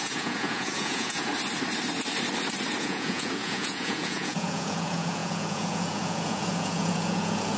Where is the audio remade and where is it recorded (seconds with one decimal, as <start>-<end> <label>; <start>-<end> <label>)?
0.0-1.3 remade; 1.3-2.8 recorded; 2.8-7.6 remade